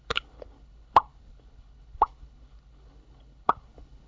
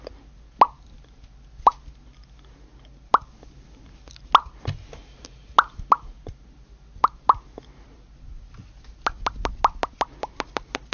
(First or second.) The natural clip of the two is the second